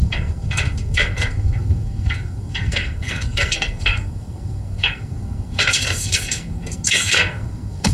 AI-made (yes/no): yes